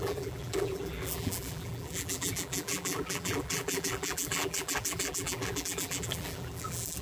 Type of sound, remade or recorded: remade